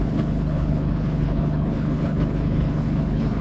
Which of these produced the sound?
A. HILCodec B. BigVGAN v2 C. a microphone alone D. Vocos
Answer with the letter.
A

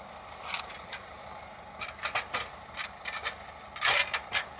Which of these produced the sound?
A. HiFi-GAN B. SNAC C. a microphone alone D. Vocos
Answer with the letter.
C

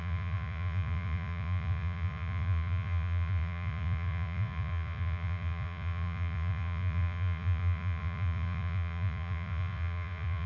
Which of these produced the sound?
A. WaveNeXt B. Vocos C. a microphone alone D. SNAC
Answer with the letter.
B